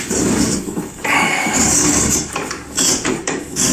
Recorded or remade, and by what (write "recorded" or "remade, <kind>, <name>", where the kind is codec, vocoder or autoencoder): remade, codec, DAC